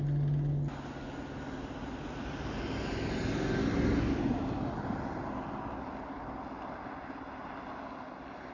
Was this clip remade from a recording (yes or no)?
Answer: no